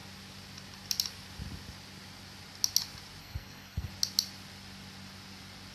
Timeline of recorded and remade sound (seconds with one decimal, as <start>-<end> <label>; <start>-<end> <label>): 0.0-3.2 recorded; 3.2-3.9 remade; 3.9-5.7 recorded